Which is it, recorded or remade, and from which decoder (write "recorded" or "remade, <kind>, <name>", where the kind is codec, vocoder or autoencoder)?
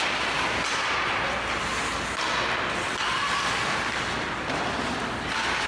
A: recorded